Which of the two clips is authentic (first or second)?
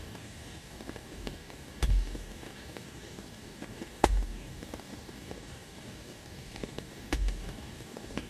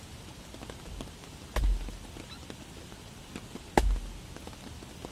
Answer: second